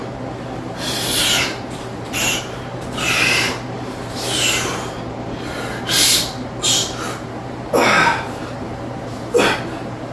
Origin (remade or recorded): remade